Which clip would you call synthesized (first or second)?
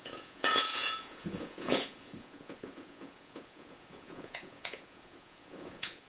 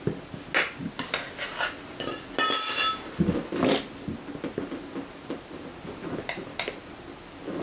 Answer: first